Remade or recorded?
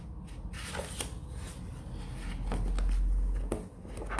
recorded